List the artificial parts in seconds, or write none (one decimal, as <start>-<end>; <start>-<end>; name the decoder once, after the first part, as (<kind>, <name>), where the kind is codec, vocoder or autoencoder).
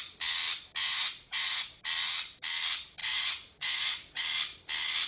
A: 0.8-1.6 (vocoder, Vocos); 3.0-4.2